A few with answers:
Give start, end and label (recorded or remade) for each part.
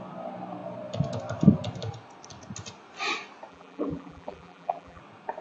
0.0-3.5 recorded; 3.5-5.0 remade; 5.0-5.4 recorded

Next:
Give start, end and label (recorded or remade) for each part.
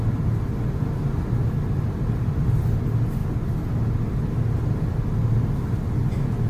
0.0-6.5 recorded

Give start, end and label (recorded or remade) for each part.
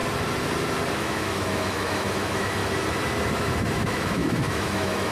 0.0-0.9 recorded; 0.9-2.6 remade; 2.6-3.3 recorded; 3.3-5.1 remade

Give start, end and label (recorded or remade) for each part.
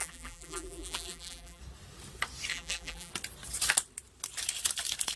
0.0-1.6 remade; 1.6-2.5 recorded; 2.5-3.1 remade; 3.1-5.2 recorded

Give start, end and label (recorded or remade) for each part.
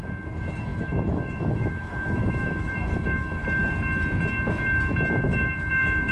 0.0-3.4 remade; 3.4-5.1 recorded; 5.1-6.1 remade